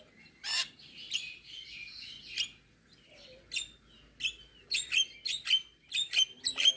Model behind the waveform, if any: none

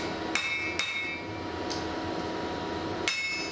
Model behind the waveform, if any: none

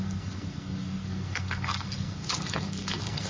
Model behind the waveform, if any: codec, SNAC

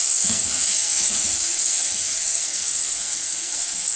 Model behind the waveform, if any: codec, SNAC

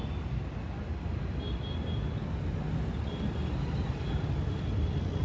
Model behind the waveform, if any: none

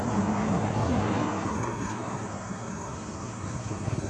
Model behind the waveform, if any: codec, SNAC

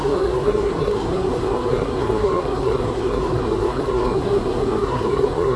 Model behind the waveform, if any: codec, SNAC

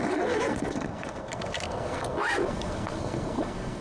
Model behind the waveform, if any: codec, SNAC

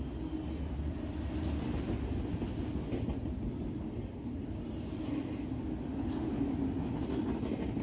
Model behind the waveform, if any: none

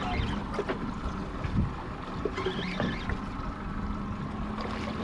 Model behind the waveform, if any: none